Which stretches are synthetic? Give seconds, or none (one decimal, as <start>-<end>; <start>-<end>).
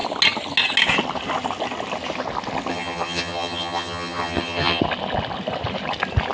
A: 2.7-4.8